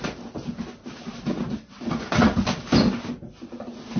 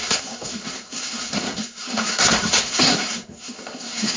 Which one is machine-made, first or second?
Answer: second